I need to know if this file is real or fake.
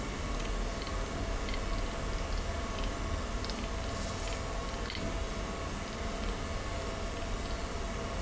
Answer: real